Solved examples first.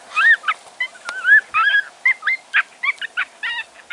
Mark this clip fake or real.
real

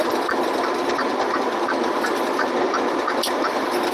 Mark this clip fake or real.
real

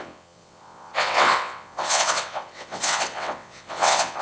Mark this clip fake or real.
fake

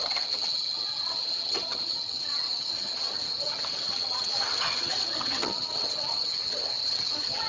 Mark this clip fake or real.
fake